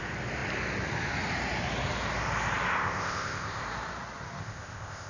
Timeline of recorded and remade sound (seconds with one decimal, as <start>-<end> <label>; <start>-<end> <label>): 0.0-2.7 recorded; 2.7-3.6 remade; 3.6-4.4 recorded; 4.4-5.1 remade